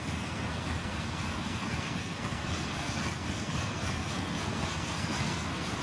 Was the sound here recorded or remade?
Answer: remade